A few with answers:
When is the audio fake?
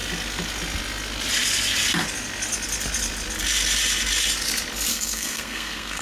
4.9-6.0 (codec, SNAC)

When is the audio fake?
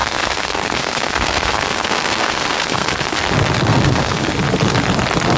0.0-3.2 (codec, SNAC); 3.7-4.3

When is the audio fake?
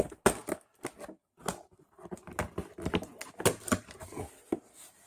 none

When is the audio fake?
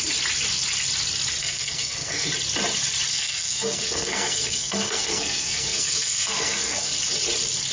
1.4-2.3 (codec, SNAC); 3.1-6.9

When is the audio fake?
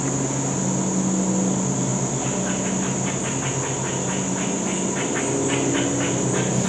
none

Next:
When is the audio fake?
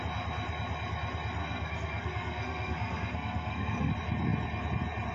1.4-3.9 (codec, SNAC)